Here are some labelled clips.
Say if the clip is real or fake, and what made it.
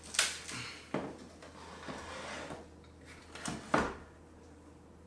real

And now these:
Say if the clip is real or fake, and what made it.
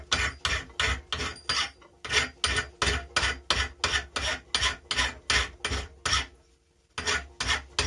real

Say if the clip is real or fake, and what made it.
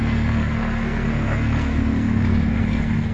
fake, codec, SNAC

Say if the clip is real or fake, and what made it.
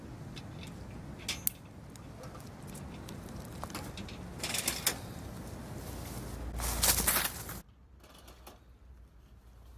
real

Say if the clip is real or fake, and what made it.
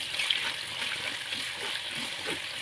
real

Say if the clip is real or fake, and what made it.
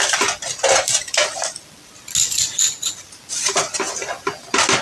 real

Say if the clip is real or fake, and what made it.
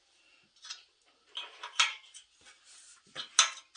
real